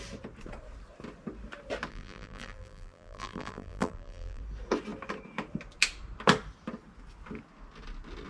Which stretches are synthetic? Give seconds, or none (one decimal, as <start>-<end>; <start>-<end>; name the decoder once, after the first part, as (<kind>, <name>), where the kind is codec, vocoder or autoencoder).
1.9-4.4 (vocoder, BigVGAN v2)